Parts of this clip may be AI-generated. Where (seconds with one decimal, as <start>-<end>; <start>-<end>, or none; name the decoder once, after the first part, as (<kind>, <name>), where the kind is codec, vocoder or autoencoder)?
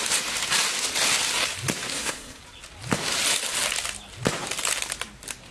1.9-2.4 (codec, SNAC)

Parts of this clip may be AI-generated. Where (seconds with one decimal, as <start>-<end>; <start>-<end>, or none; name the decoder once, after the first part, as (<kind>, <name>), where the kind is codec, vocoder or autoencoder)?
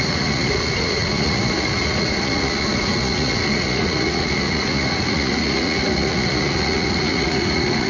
0.0-7.9 (vocoder, Vocos)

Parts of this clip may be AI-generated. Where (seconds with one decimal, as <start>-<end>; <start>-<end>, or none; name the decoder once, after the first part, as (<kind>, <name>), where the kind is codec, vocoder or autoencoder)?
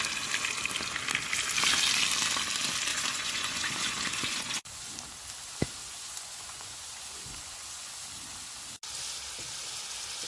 2.9-4.9 (vocoder, Vocos); 5.8-7.9